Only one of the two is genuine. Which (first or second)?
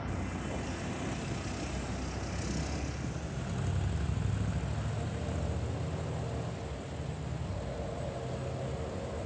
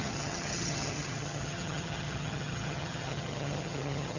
first